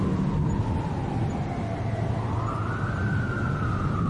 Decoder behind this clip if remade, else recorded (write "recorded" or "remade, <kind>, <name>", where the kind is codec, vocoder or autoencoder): recorded